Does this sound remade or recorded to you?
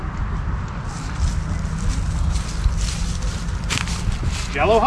recorded